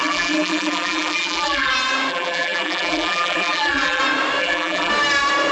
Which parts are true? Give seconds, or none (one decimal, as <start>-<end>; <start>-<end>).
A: 1.7-2.1; 4.0-4.4; 4.9-5.5